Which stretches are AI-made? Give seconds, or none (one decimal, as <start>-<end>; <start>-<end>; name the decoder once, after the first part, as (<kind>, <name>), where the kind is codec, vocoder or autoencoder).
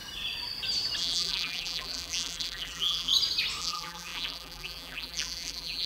1.0-3.1 (vocoder, BigVGAN v2); 3.6-5.9